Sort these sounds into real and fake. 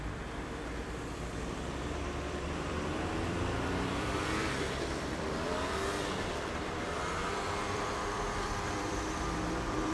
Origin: fake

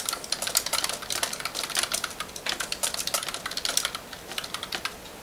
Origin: real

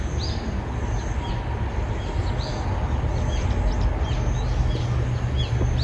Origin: real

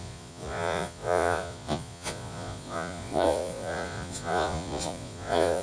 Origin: fake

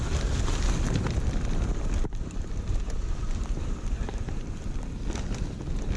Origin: real